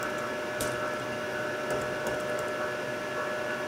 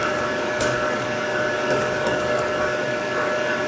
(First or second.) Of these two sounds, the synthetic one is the second